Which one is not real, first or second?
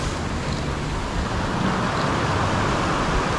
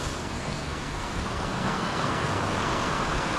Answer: second